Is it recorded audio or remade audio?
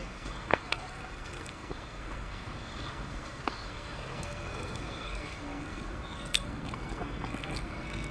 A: remade